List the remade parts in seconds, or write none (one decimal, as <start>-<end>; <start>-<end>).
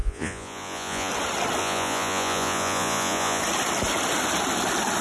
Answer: 0.0-1.1; 1.6-3.4